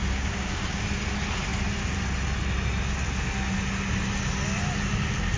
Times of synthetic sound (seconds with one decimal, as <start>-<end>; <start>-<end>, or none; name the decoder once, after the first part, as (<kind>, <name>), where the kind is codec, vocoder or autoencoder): 0.0-0.8 (codec, DAC)